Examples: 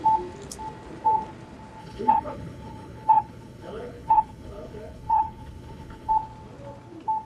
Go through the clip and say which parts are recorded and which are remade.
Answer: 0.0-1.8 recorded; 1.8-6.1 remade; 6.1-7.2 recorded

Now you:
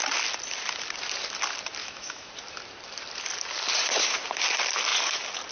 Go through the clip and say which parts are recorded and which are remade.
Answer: 0.0-1.8 recorded; 1.8-2.3 remade; 2.3-5.5 recorded

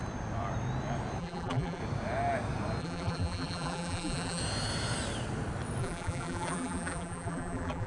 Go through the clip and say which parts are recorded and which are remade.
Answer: 0.0-1.2 recorded; 1.2-1.8 remade; 1.8-2.8 recorded; 2.8-4.4 remade; 4.4-5.8 recorded; 5.8-7.9 remade

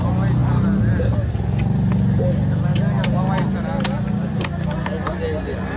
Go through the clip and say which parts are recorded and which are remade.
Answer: 0.0-5.8 recorded

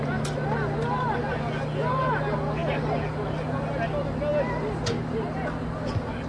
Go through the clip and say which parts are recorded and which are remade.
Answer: 0.0-6.3 recorded

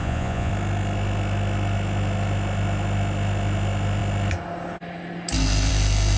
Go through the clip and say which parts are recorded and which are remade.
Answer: 0.0-0.5 remade; 0.5-6.2 recorded